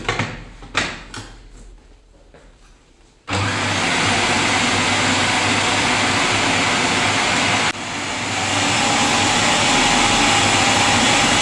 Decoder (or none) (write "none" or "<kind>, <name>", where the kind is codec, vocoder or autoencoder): none